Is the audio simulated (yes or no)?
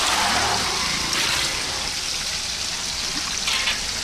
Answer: no